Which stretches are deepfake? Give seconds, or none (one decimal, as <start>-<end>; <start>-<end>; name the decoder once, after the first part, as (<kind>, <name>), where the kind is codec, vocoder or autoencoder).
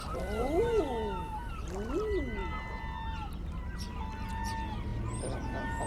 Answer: 0.0-0.6 (vocoder, BigVGAN v2)